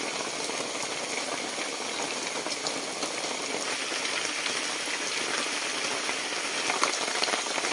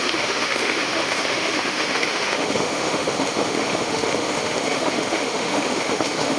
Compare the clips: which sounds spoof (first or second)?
second